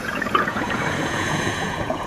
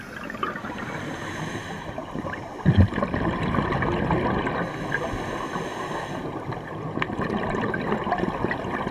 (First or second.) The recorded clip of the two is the second